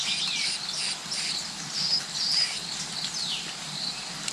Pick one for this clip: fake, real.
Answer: fake